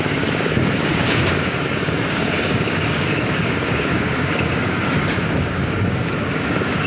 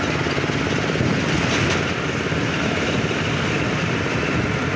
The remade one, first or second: first